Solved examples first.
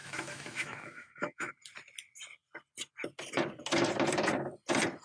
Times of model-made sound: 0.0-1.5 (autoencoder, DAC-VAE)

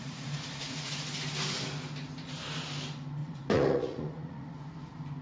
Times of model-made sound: 0.0-0.9 (vocoder, Vocos); 3.2-4.5

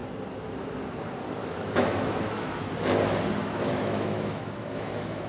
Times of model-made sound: 1.4-2.5 (autoencoder, DAC-VAE); 3.4-5.3

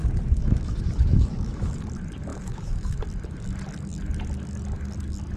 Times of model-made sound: 0.0-1.8 (autoencoder, DAC-VAE); 2.3-3.0

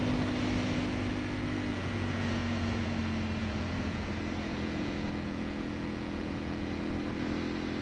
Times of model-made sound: 1.7-3.0 (vocoder, Vocos); 3.4-4.1; 4.5-6.9